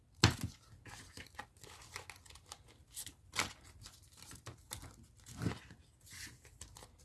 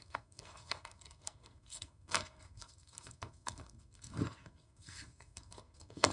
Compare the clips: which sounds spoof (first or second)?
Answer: second